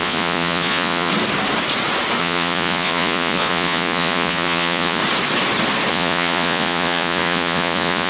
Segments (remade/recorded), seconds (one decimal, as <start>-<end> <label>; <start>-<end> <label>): 0.0-1.1 remade; 1.1-2.2 recorded; 2.2-5.0 remade; 5.0-5.9 recorded; 5.9-8.1 remade